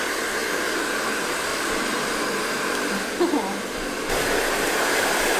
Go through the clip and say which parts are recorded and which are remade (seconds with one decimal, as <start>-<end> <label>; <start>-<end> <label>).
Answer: 0.0-5.4 recorded